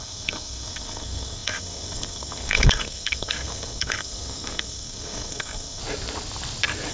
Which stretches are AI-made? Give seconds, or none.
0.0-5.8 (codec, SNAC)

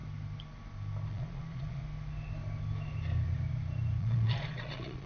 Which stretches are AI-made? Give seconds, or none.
1.1-1.8 (vocoder, Vocos); 4.0-5.1

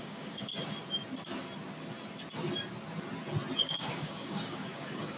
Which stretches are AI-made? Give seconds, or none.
0.0-0.5 (codec, DAC); 3.6-5.2

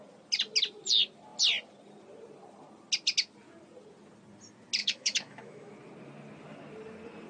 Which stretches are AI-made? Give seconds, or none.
4.8-5.7 (autoencoder, DAC-VAE)

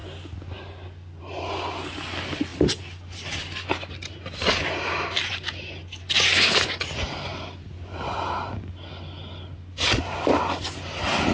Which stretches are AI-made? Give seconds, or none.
none

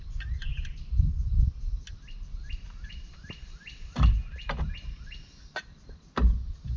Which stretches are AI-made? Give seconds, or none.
none